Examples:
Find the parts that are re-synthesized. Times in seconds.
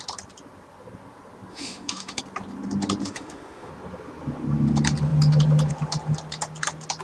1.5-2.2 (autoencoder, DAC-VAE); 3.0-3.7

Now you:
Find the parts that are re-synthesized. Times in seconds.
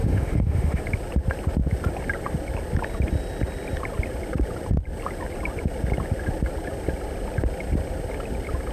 0.0-0.8 (autoencoder, DAC-VAE)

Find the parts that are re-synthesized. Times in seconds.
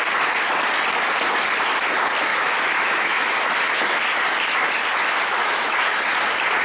2.3-3.3 (autoencoder, DAC-VAE); 5.4-6.0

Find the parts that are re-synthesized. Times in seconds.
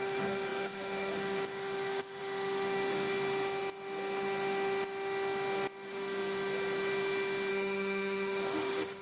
0.0-2.9 (autoencoder, DAC-VAE); 7.5-9.0